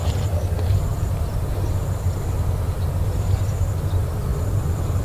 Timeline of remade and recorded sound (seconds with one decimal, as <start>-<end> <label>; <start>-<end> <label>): 0.0-5.0 recorded